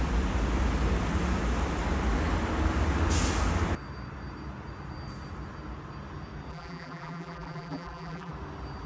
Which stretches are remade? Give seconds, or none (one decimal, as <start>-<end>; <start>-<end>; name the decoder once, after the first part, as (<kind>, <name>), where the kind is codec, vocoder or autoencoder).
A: 6.5-8.3 (vocoder, BigVGAN v2)